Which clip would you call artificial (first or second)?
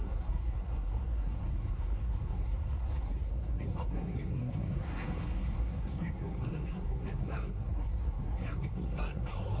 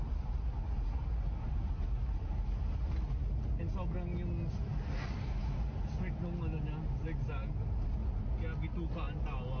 first